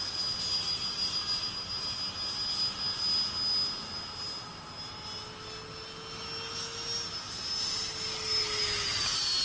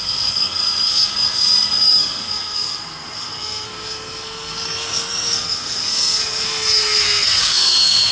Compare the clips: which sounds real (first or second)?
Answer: first